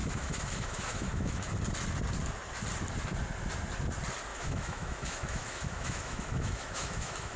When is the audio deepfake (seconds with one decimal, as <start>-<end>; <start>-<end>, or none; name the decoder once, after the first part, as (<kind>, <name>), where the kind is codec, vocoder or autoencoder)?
0.0-1.5 (autoencoder, DAC-VAE); 4.3-7.4